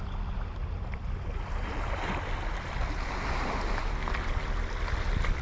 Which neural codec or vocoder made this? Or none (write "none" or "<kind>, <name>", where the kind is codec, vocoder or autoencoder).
none